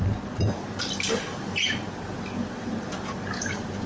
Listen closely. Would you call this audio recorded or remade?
recorded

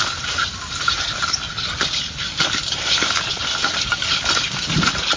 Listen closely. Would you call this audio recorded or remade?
remade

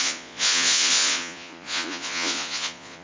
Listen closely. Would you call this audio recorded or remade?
remade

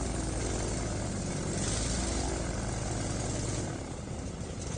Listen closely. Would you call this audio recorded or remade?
recorded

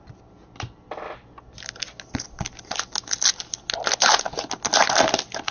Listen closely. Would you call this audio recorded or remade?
recorded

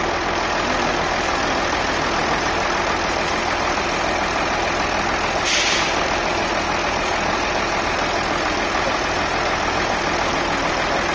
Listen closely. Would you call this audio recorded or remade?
recorded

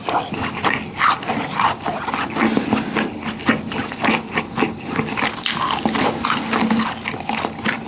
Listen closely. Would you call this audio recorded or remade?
recorded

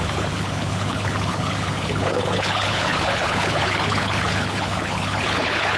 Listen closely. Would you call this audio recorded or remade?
remade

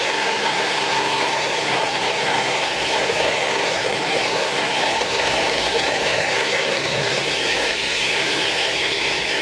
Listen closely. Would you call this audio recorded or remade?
remade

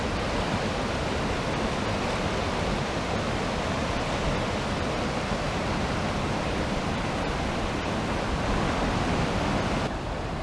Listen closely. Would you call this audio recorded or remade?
recorded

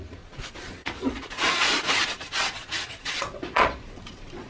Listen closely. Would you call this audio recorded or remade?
remade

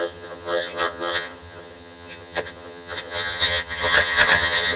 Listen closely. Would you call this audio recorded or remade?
remade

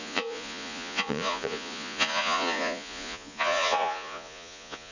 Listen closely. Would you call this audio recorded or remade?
remade